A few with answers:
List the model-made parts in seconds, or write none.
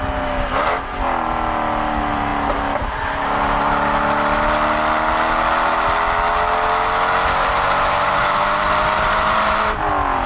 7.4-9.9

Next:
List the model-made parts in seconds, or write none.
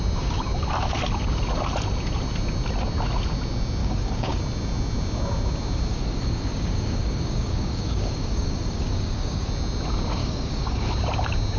3.8-4.4; 5.9-9.5; 10.2-10.9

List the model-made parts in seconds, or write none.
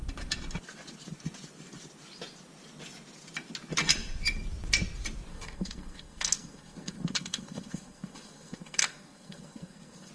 5.3-10.1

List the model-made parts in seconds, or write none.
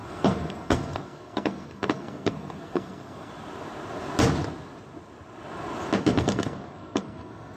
0.0-3.3; 6.0-7.6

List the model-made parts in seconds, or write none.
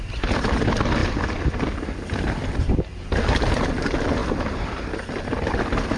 4.2-4.9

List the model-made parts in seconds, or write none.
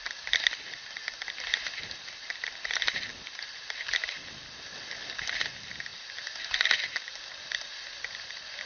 none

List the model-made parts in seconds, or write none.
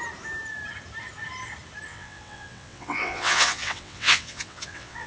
1.9-5.1